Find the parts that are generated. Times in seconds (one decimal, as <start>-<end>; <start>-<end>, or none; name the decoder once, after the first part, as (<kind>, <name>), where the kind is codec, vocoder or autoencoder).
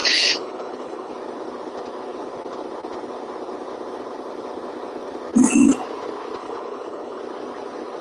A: 0.0-1.1 (codec, HILCodec); 6.4-7.2